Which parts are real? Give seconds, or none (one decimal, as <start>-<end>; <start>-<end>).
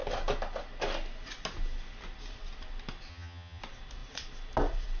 0.0-3.1; 3.6-5.0